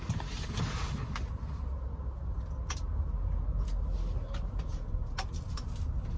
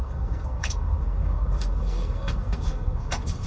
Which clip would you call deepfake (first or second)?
second